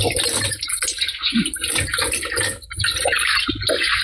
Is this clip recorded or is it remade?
recorded